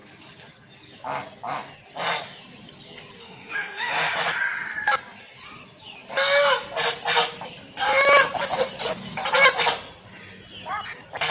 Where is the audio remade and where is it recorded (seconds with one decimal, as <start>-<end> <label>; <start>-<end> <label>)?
0.0-3.2 recorded; 3.2-3.9 remade; 3.9-11.3 recorded